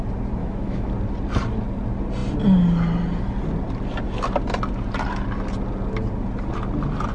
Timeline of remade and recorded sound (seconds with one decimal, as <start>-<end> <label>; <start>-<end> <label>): 0.0-0.4 recorded; 0.4-0.9 remade; 0.9-7.1 recorded